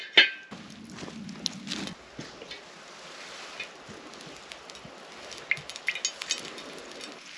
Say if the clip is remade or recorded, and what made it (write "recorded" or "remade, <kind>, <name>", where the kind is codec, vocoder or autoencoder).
recorded